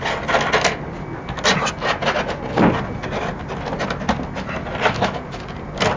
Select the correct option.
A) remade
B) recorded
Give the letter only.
B